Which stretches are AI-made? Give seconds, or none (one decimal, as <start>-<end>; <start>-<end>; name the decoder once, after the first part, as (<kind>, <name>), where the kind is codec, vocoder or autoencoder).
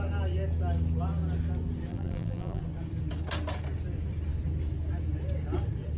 1.9-2.6 (vocoder, BigVGAN v2)